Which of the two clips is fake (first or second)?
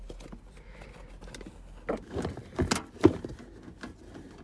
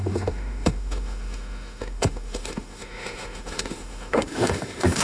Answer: second